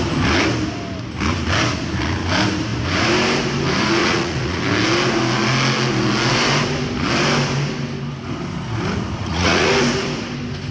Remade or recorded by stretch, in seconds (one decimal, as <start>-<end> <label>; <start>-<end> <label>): 0.0-4.0 recorded; 4.0-4.6 remade; 4.6-9.2 recorded; 9.2-9.7 remade; 9.7-10.7 recorded